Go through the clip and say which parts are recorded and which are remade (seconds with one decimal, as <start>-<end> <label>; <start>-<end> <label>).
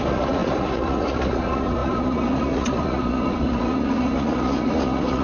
0.0-5.2 remade